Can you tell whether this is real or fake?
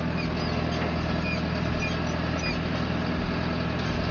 real